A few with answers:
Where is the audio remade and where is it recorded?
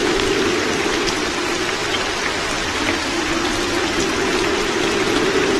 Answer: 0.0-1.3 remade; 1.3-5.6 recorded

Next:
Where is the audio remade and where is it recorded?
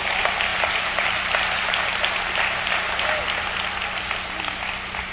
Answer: 0.0-0.5 recorded; 0.5-3.6 remade; 3.6-5.1 recorded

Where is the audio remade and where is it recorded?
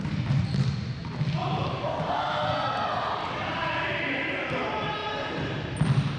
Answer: 0.0-1.0 recorded; 1.0-2.5 remade; 2.5-6.2 recorded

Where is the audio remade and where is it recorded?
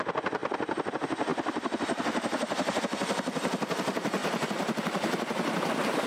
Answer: 0.0-1.3 recorded; 1.3-2.8 remade; 2.8-4.2 recorded; 4.2-6.1 remade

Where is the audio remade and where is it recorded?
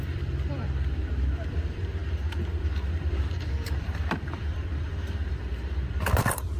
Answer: 0.0-2.0 remade; 2.0-2.6 recorded; 2.6-6.6 remade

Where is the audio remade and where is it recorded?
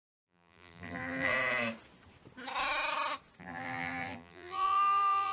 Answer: 0.0-1.3 remade; 1.3-3.4 recorded; 3.4-5.3 remade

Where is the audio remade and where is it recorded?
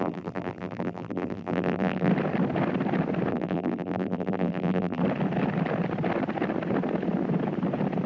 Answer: 0.0-2.1 remade; 2.1-3.3 recorded; 3.3-5.0 remade; 5.0-8.1 recorded